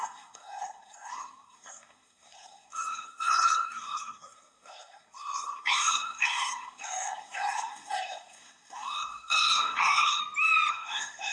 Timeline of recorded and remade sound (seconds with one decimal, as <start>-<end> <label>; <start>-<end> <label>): 0.0-10.2 remade; 10.2-10.7 recorded; 10.7-11.3 remade